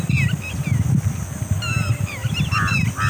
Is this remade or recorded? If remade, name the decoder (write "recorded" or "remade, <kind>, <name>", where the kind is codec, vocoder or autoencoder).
recorded